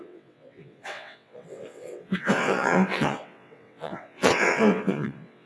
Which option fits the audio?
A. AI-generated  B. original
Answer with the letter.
A